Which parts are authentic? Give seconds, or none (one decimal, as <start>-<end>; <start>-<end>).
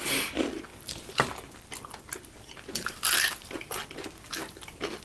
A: 0.0-5.0